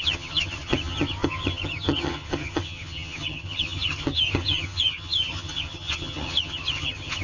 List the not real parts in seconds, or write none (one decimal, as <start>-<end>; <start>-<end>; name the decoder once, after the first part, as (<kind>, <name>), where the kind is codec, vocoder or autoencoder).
0.0-7.2 (vocoder, HiFi-GAN)